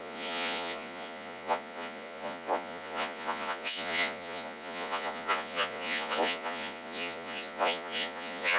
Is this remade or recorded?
remade